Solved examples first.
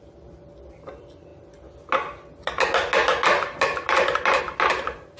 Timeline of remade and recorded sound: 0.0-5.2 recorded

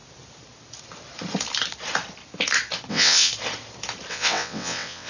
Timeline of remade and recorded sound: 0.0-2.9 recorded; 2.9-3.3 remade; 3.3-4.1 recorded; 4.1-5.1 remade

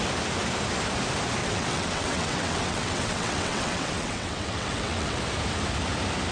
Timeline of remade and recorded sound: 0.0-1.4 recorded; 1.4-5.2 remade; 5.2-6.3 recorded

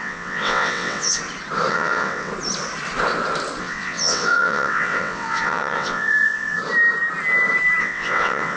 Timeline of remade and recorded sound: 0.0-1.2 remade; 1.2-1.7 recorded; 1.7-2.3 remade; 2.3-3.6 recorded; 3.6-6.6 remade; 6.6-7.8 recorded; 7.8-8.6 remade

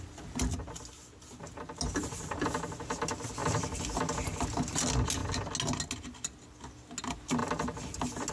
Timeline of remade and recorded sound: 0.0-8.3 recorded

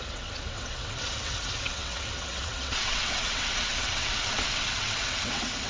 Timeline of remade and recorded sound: 0.0-5.7 remade